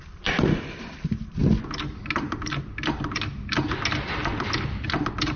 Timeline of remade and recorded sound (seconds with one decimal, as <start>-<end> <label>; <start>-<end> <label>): 0.0-5.4 recorded